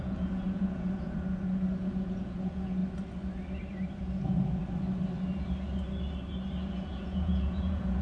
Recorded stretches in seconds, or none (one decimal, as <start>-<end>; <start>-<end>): 2.8-4.0; 4.6-6.7